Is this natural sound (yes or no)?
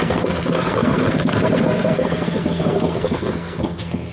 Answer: no